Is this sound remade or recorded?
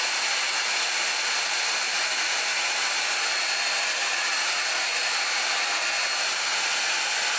recorded